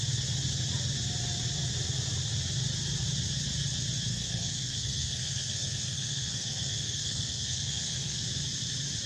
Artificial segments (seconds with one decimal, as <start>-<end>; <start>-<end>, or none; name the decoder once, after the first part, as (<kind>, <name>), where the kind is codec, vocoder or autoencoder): 4.1-8.2 (codec, SNAC)